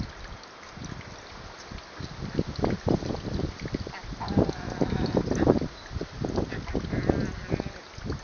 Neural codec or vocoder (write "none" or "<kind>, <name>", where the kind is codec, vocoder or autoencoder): none